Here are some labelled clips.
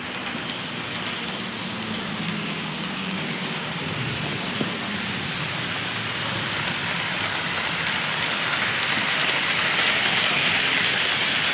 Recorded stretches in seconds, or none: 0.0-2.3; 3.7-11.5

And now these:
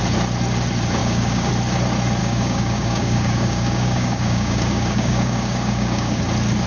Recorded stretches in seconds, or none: 0.0-1.0; 1.5-2.2; 6.2-6.7